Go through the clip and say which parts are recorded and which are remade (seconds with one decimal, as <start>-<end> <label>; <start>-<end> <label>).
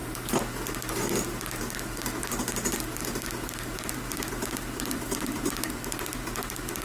0.0-1.2 recorded; 1.2-6.8 remade